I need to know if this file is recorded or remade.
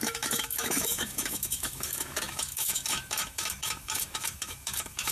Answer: remade